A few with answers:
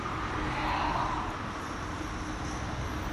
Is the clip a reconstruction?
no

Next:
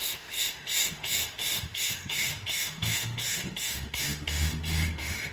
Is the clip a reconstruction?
yes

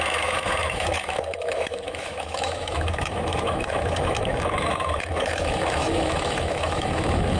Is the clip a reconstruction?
yes